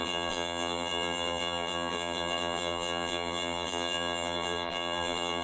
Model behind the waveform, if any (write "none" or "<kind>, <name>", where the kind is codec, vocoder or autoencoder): vocoder, BigVGAN v2